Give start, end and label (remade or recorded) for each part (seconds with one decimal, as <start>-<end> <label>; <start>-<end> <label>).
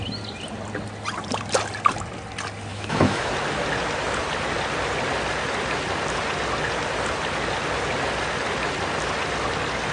0.0-2.7 recorded; 2.7-3.3 remade; 3.3-9.9 recorded